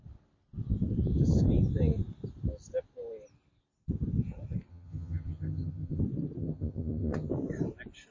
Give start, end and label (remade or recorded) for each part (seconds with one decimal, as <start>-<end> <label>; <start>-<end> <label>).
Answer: 0.0-4.7 recorded; 4.7-6.0 remade; 6.0-6.4 recorded; 6.4-7.3 remade; 7.3-8.1 recorded